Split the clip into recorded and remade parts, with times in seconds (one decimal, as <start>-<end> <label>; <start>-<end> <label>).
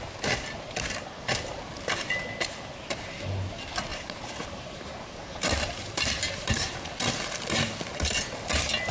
0.0-3.9 recorded; 3.9-7.1 remade; 7.1-8.9 recorded